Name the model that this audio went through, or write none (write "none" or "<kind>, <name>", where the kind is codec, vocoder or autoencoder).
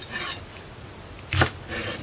none